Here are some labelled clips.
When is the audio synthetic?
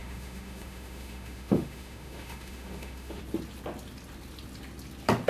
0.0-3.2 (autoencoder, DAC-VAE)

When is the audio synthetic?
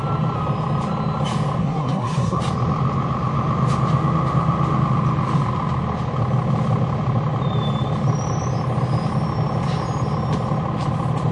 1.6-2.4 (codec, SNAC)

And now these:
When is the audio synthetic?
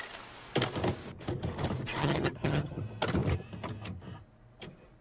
2.0-2.8 (vocoder, HiFi-GAN)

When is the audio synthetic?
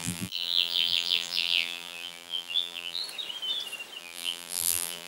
0.0-3.0 (vocoder, BigVGAN v2); 4.0-5.1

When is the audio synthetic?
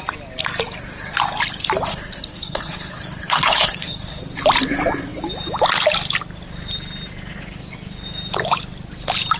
1.9-4.2 (codec, HILCodec)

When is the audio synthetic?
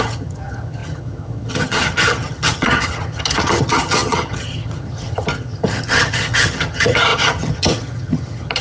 0.0-8.6 (vocoder, HiFi-GAN)